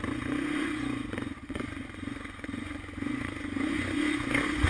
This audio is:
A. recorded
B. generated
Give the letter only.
B